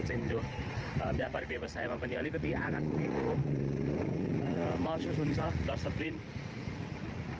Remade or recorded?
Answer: remade